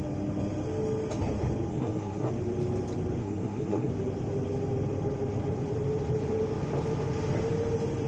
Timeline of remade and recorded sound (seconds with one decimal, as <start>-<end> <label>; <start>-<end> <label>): 0.0-1.7 recorded; 1.7-2.3 remade; 2.3-3.2 recorded; 3.2-3.9 remade; 3.9-8.1 recorded